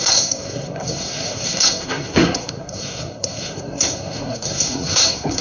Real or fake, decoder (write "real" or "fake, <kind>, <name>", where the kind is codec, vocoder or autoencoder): fake, codec, SNAC